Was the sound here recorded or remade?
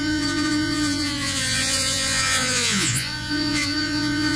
remade